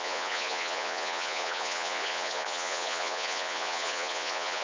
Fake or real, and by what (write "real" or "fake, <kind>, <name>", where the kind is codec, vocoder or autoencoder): fake, vocoder, Vocos